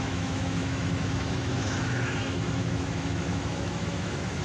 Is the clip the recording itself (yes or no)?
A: no